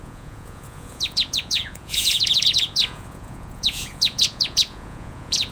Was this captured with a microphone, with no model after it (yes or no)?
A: no